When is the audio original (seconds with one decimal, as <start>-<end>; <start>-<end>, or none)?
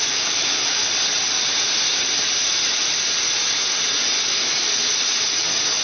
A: 0.8-4.3; 4.7-5.8